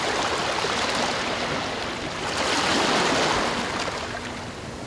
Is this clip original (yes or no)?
yes